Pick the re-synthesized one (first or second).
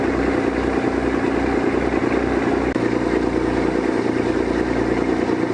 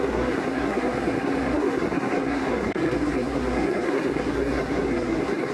second